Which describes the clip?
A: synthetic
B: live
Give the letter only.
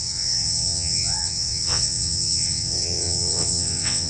A